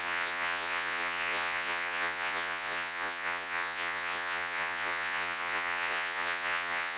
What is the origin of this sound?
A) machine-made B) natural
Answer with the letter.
A